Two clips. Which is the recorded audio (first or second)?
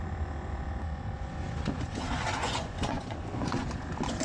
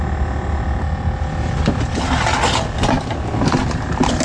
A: second